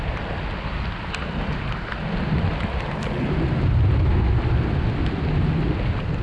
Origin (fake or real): real